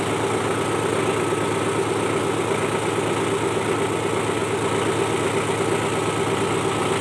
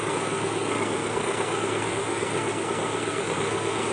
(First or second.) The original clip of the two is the first